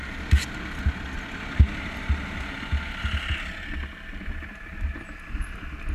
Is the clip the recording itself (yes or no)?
yes